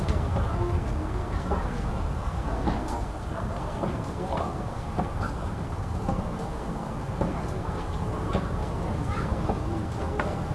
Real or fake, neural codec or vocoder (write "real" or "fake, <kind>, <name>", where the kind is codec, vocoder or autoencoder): fake, codec, SNAC